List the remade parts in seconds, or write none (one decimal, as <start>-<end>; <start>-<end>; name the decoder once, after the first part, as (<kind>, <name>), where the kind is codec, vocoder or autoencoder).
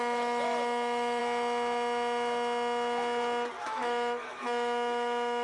0.0-1.2 (autoencoder, DAC-VAE); 3.6-5.4